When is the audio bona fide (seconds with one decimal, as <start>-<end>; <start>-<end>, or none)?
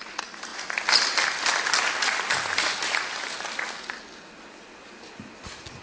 0.0-5.8